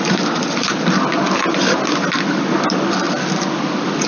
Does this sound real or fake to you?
real